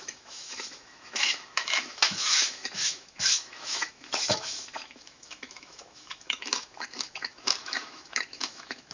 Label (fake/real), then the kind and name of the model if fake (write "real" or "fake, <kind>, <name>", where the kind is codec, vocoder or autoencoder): fake, autoencoder, DAC-VAE